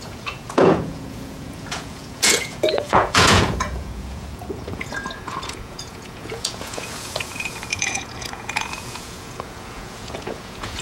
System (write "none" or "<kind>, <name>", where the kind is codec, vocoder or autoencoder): vocoder, Vocos